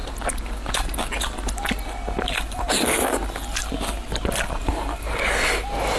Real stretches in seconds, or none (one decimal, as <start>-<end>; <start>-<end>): 0.0-6.0